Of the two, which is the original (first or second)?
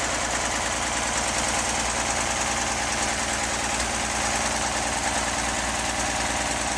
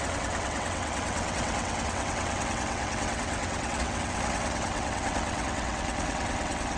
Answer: first